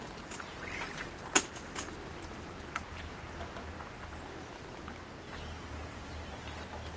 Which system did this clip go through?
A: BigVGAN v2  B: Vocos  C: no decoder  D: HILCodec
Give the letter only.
C